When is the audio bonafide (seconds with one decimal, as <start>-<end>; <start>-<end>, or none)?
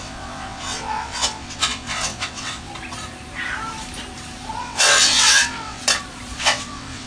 2.7-4.6; 5.8-6.4